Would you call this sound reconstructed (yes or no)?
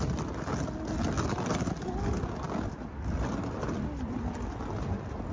no